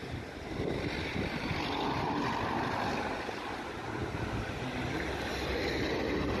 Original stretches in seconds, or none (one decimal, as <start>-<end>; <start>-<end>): none